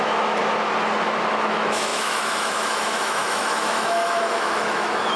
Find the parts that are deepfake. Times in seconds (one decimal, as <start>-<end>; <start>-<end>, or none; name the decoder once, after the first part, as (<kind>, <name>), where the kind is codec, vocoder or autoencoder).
0.0-0.4 (autoencoder, DAC-VAE); 1.3-5.2